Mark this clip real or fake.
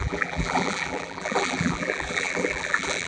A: fake